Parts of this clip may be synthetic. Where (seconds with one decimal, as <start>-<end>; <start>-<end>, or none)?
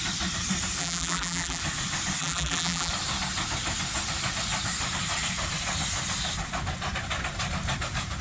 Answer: 0.8-1.6; 2.2-2.9